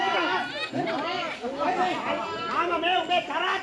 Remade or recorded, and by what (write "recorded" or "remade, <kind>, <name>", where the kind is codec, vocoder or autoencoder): recorded